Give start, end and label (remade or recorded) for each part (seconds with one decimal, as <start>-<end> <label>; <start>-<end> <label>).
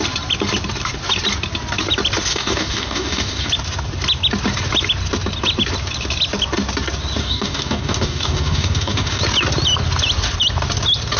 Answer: 0.0-2.3 recorded; 2.3-3.5 remade; 3.5-7.2 recorded; 7.2-9.2 remade; 9.2-11.2 recorded